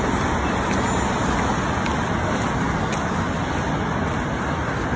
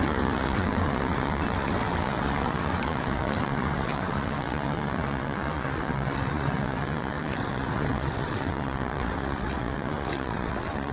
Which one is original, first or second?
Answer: first